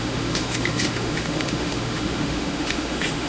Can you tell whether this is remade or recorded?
remade